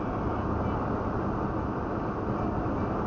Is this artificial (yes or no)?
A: no